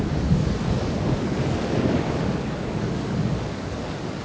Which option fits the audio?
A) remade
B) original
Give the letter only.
A